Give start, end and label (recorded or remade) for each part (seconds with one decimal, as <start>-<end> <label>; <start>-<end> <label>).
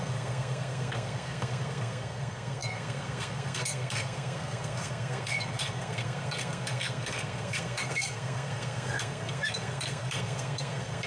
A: 0.0-11.1 remade